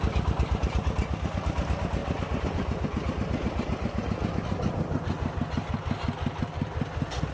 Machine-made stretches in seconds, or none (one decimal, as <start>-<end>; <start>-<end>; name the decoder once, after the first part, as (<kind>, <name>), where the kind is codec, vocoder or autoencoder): none